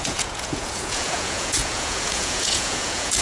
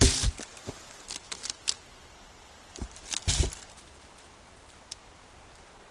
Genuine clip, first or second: second